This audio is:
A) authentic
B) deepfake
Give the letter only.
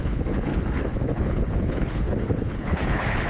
B